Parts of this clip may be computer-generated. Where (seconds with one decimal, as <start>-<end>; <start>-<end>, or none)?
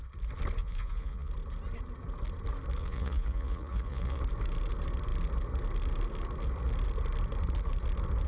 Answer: 0.6-1.3; 2.8-4.2